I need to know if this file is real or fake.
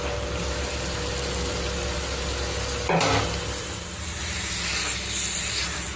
real